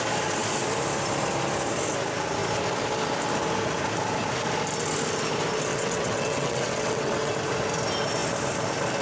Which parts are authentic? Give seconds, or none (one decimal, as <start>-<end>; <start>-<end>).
0.0-5.7; 7.3-9.0